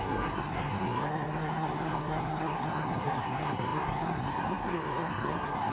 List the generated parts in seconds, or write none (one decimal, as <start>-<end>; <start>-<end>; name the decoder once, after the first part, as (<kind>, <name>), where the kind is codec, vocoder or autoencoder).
0.0-5.7 (codec, SNAC)